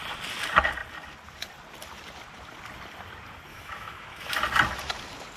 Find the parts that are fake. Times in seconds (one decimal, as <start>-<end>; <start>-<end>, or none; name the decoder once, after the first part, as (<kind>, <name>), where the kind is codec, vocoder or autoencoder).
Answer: 3.5-4.3 (autoencoder, DAC-VAE)